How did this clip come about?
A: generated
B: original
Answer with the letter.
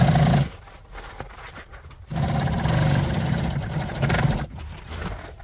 B